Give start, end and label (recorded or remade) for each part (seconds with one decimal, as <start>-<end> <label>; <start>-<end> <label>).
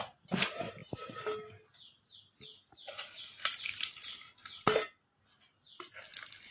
0.0-6.5 recorded